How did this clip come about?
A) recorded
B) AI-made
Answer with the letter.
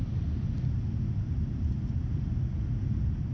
A